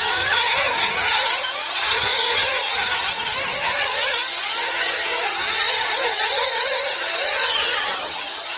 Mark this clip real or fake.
fake